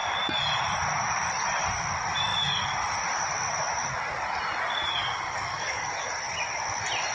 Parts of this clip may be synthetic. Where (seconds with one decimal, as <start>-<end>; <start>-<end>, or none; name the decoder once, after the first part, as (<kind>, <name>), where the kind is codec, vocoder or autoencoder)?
5.0-6.2 (codec, DAC)